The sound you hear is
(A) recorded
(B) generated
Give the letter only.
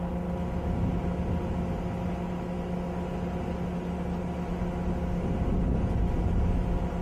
A